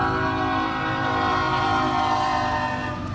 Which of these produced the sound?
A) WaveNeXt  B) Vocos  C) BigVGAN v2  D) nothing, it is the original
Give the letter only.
D